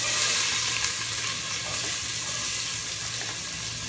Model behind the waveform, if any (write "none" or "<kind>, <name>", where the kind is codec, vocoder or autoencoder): none